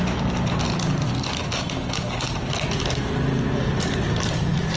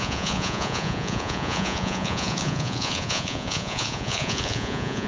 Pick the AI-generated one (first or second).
second